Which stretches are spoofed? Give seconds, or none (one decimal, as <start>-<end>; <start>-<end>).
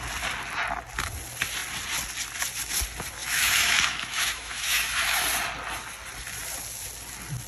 3.2-5.2